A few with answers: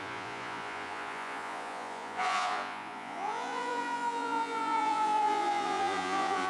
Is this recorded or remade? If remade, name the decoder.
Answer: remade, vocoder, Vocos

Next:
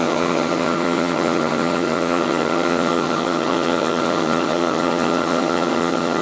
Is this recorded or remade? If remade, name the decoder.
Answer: remade, vocoder, HiFi-GAN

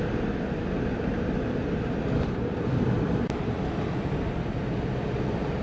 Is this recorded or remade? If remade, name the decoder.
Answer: remade, vocoder, BigVGAN v2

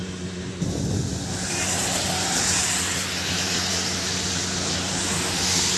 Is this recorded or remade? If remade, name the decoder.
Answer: recorded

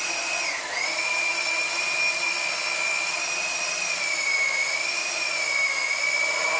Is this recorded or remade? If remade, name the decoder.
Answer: remade, vocoder, BigVGAN v2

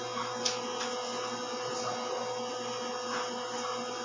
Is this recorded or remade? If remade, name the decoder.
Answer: recorded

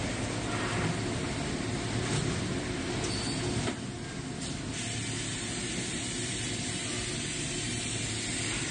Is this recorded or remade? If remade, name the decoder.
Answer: recorded